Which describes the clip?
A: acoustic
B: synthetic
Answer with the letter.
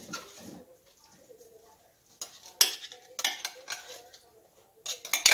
A